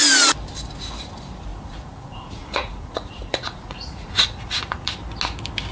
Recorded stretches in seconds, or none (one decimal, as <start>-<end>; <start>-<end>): 0.0-1.5; 4.9-5.7